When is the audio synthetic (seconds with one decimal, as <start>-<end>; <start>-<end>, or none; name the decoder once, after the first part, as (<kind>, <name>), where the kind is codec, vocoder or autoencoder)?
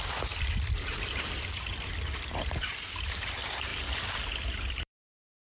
0.0-3.7 (vocoder, BigVGAN v2); 4.7-5.5